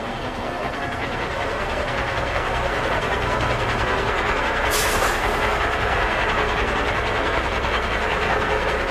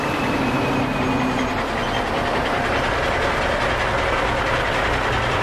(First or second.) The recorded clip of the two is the second